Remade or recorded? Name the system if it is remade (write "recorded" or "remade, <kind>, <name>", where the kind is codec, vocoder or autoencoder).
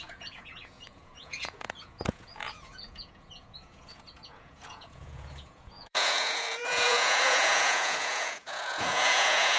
remade, vocoder, Vocos